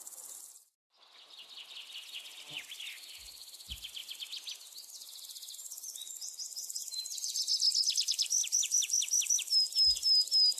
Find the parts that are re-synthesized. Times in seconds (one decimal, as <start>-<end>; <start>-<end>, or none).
none